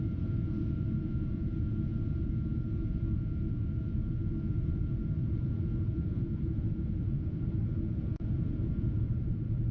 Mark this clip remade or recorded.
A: remade